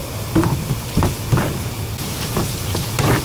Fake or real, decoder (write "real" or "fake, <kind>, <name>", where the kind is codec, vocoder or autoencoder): real